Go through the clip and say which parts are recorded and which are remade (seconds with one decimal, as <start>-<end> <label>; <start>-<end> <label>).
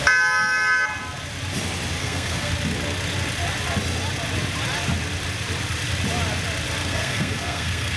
0.0-2.0 recorded; 2.0-2.5 remade; 2.5-6.8 recorded; 6.8-8.0 remade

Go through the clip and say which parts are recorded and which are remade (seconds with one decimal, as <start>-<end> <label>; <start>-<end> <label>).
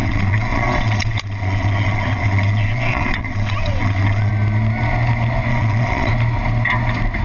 0.0-4.3 remade; 4.3-5.5 recorded; 5.5-6.1 remade; 6.1-7.2 recorded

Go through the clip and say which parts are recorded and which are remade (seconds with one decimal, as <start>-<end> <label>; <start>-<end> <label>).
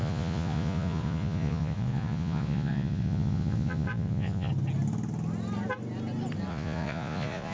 0.0-4.5 remade; 4.5-6.5 recorded; 6.5-7.5 remade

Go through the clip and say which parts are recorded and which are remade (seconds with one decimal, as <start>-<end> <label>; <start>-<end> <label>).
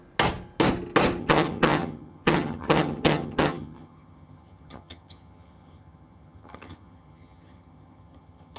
0.0-1.2 recorded; 1.2-8.6 remade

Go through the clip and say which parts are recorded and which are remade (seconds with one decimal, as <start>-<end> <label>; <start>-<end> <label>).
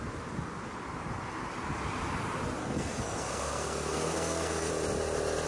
0.0-2.6 recorded; 2.6-4.7 remade; 4.7-5.5 recorded